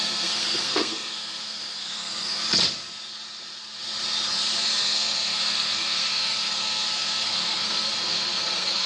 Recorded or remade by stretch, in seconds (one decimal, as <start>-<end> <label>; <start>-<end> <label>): 0.0-2.4 remade; 2.4-4.8 recorded; 4.8-8.9 remade